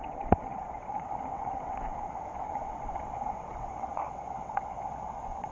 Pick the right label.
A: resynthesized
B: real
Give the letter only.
A